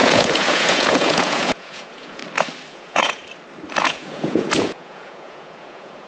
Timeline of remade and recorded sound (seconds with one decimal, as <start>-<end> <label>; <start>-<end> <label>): 0.0-2.2 remade; 2.2-2.7 recorded; 2.7-3.2 remade; 3.2-3.8 recorded; 3.8-6.1 remade

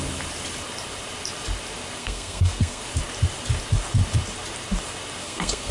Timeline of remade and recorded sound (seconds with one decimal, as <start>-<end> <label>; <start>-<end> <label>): 0.0-2.0 recorded; 2.0-2.8 remade; 2.8-5.2 recorded; 5.2-5.7 remade

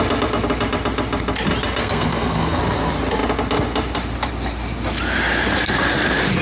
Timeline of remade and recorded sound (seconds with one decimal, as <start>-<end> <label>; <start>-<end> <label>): 0.0-1.8 recorded; 1.8-2.6 remade; 2.6-6.4 recorded

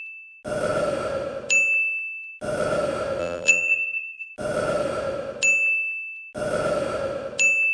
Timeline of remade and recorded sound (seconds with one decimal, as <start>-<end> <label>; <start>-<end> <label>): 0.0-3.2 recorded; 3.2-4.3 remade; 4.3-7.7 recorded

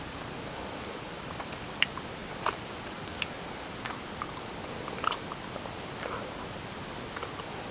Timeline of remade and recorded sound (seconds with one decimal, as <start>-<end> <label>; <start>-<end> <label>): 0.0-7.7 recorded